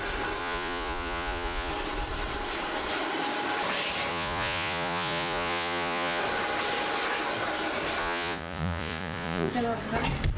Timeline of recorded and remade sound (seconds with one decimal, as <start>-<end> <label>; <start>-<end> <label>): 0.0-0.4 recorded; 0.4-1.7 remade; 1.7-4.1 recorded; 4.1-6.2 remade; 6.2-8.0 recorded; 8.0-9.5 remade; 9.5-10.4 recorded